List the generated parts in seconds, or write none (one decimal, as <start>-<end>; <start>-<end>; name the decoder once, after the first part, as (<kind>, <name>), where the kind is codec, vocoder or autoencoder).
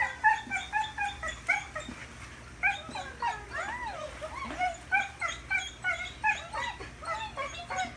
none